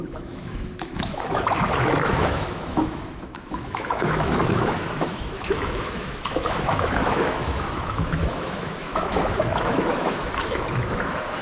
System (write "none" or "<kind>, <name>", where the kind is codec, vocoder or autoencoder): autoencoder, DAC-VAE